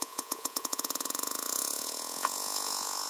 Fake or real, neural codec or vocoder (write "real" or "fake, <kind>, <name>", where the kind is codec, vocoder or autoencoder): fake, vocoder, Vocos